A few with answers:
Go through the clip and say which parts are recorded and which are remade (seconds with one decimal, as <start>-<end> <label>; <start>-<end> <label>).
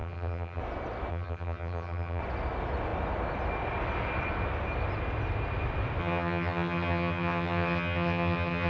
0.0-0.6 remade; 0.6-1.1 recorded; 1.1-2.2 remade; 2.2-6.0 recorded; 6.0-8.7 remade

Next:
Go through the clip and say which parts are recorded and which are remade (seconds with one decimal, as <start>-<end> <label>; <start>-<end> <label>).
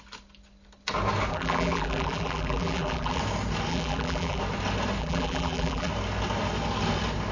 0.0-1.3 recorded; 1.3-3.2 remade; 3.2-3.7 recorded; 3.7-4.4 remade; 4.4-5.0 recorded; 5.0-5.9 remade; 5.9-7.3 recorded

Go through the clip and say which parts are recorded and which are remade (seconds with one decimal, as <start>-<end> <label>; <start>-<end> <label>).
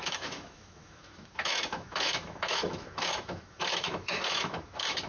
0.0-5.1 remade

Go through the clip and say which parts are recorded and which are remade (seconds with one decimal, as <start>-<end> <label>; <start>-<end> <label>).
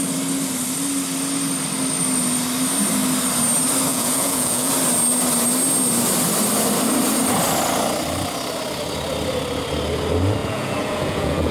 0.0-3.9 recorded; 3.9-4.7 remade; 4.7-10.4 recorded; 10.4-11.5 remade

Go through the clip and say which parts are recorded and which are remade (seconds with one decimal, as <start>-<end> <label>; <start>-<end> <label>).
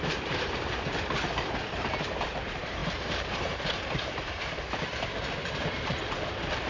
0.0-6.7 remade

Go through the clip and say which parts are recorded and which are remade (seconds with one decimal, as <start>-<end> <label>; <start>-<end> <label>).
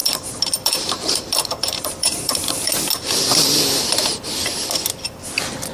0.0-2.7 remade; 2.7-5.7 recorded